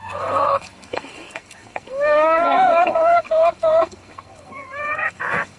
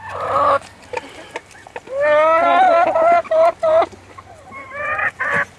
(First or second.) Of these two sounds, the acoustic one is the second